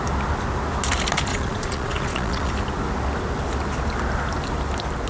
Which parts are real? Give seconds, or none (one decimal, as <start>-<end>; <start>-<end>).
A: 0.0-1.3; 2.5-5.1